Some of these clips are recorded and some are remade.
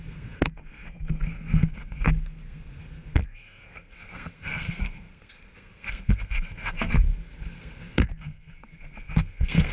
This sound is remade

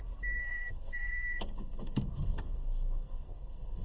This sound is remade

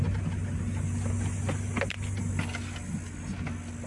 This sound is recorded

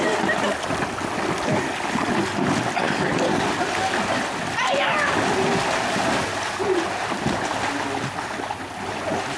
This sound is recorded